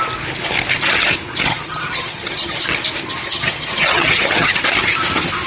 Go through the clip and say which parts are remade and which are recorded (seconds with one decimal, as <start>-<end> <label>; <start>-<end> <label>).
0.0-1.5 recorded; 1.5-2.6 remade; 2.6-3.2 recorded; 3.2-4.6 remade; 4.6-5.5 recorded